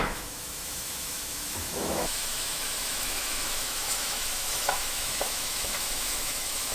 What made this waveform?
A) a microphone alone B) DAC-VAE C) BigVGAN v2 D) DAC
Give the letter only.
B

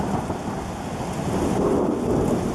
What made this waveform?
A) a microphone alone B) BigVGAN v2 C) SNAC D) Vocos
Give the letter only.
A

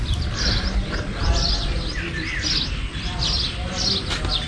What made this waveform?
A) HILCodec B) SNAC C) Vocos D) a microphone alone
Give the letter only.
D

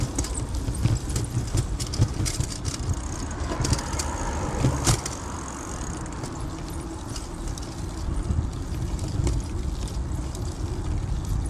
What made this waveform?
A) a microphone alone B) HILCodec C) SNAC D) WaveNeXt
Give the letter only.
A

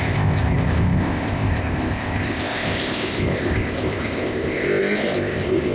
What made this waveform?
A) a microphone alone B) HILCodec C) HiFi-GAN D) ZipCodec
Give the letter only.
D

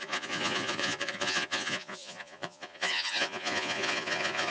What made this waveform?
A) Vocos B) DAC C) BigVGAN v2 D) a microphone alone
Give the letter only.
A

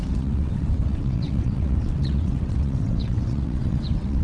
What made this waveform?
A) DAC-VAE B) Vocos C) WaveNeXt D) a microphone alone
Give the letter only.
C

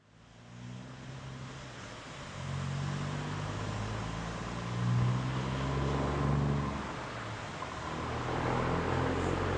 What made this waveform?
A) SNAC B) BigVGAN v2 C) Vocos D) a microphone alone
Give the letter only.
D